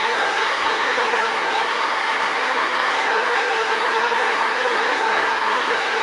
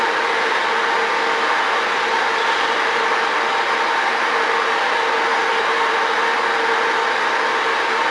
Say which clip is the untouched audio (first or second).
second